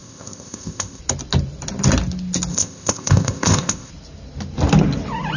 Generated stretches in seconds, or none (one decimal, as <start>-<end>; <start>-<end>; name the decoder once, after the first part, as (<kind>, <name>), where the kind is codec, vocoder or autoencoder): 0.0-1.0 (codec, ZipCodec); 2.5-3.9